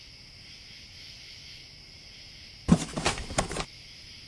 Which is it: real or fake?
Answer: real